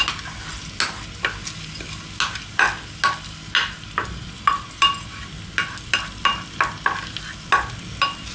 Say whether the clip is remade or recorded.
recorded